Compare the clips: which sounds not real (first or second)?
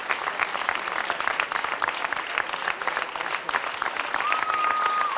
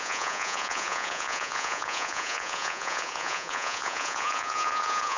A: second